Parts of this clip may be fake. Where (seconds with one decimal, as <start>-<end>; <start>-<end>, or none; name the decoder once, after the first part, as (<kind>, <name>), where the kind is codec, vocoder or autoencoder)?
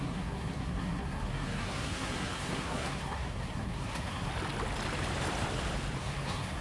0.0-4.3 (codec, SNAC); 6.0-6.6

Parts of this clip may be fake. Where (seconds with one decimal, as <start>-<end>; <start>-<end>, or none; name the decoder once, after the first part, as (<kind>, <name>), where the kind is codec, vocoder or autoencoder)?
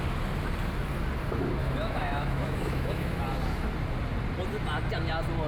1.6-3.2 (autoencoder, DAC-VAE)